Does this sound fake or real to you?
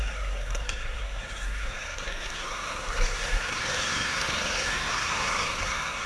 fake